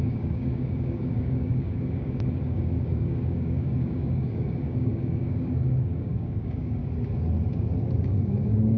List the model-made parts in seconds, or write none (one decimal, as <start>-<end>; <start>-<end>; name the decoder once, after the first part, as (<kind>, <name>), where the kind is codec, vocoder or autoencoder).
0.0-6.8 (codec, DAC); 8.0-8.8